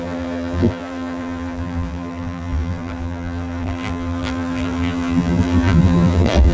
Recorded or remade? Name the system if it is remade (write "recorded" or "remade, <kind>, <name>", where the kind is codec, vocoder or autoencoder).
remade, vocoder, BigVGAN v2